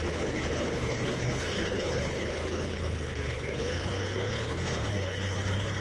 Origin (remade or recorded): remade